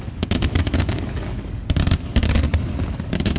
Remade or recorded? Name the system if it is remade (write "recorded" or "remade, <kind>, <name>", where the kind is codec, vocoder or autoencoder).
remade, codec, DAC